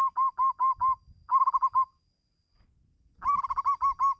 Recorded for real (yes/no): yes